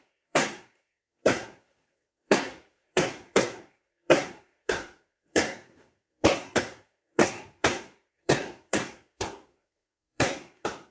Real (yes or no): no